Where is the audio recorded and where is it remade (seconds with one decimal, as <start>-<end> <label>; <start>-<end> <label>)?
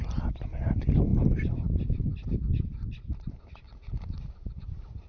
0.0-5.1 recorded